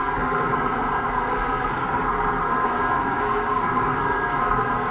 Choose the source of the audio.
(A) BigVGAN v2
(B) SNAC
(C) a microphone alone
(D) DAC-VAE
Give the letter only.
B